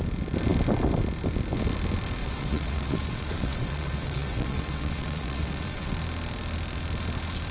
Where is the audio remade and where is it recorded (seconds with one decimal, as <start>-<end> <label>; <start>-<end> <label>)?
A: 0.0-2.2 recorded; 2.2-5.9 remade; 5.9-7.5 recorded